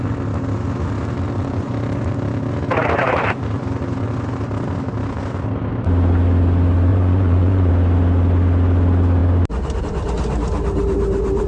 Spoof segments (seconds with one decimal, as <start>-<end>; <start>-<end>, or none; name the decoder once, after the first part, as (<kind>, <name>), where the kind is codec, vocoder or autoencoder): 6.9-7.7 (vocoder, Vocos)